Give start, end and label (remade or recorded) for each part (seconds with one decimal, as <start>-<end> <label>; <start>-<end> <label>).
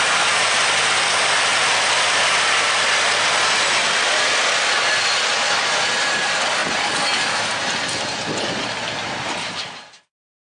0.0-10.4 recorded